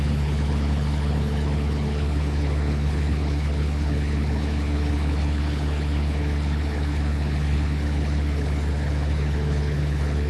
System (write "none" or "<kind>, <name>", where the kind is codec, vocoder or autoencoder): codec, HILCodec